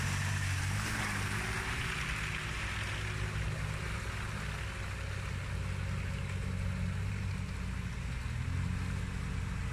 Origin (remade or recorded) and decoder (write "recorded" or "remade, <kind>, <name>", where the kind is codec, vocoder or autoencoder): recorded